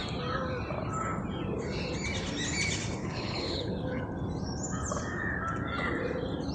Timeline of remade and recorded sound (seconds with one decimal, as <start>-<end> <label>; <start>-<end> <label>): 0.0-3.0 recorded; 3.0-4.0 remade; 4.0-6.5 recorded